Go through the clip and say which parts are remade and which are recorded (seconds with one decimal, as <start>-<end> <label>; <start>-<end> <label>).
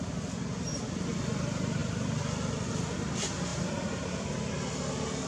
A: 0.0-3.5 recorded; 3.5-4.2 remade; 4.2-5.3 recorded